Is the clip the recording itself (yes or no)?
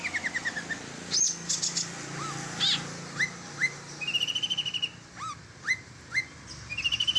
yes